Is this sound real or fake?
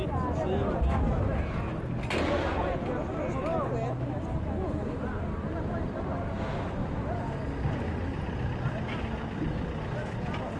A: real